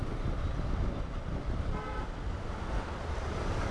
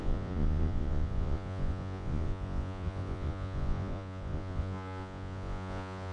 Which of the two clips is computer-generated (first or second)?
second